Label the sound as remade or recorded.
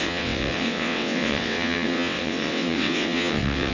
remade